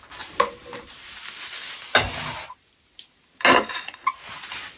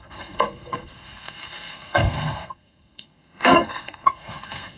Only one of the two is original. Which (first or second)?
first